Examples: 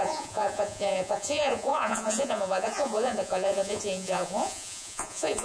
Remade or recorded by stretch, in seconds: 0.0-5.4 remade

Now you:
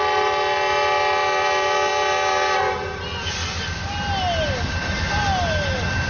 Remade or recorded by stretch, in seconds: 0.0-6.1 recorded